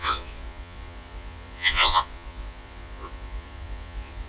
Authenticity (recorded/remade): remade